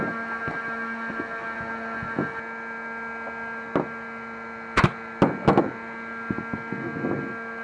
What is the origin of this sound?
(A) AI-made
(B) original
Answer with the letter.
B